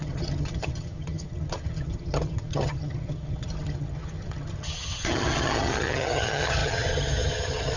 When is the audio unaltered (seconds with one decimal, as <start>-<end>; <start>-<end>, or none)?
none